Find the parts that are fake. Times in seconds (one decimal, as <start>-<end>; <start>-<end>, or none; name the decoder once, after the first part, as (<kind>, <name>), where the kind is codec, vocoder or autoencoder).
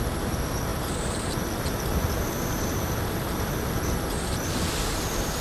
none